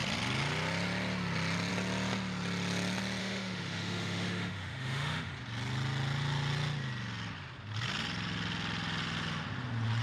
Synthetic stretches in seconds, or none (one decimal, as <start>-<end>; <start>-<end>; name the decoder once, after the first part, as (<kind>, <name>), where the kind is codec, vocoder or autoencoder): 3.2-5.3 (autoencoder, DAC-VAE)